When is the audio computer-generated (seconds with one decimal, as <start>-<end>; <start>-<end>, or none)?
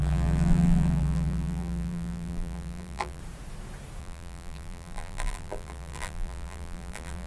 0.0-3.2; 4.0-7.3